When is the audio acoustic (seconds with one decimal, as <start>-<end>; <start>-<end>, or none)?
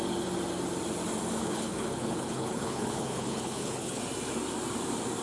0.0-1.4; 4.0-5.2